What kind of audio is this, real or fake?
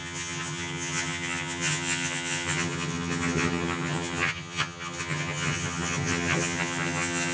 fake